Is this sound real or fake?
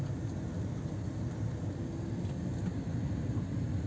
real